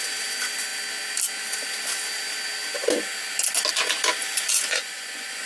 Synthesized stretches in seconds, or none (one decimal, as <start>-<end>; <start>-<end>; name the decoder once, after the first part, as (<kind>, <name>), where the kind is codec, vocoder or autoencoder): 4.5-5.5 (vocoder, Vocos)